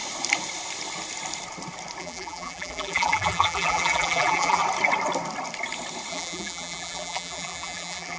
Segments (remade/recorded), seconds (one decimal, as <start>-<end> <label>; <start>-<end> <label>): 0.0-2.0 recorded; 2.0-4.6 remade; 4.6-6.1 recorded; 6.1-8.2 remade